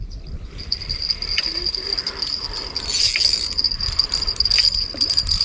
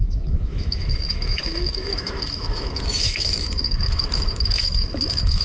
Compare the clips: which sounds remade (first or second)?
second